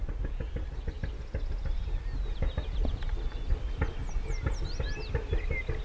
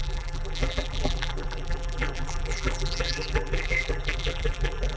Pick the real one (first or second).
first